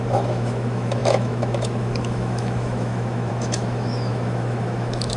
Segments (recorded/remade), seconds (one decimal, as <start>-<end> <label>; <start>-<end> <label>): 0.0-5.2 remade